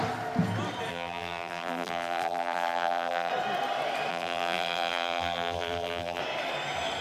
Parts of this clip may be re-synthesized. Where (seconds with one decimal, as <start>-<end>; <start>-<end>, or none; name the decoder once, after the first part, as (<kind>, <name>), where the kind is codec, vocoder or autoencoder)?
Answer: 0.9-3.3 (vocoder, BigVGAN v2); 4.1-6.2